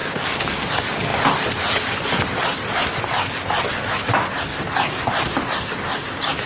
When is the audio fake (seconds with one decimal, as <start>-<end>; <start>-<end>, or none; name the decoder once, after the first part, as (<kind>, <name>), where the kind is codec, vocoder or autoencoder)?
0.0-0.7 (codec, DAC)